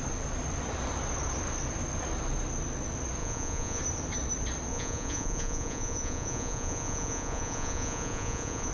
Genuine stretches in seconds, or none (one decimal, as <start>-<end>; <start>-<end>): 0.0-3.2; 3.8-4.7